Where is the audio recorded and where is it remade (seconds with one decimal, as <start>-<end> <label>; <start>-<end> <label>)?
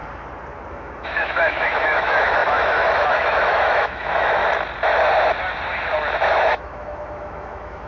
0.0-0.7 recorded; 0.7-4.4 remade; 4.4-6.3 recorded; 6.3-7.9 remade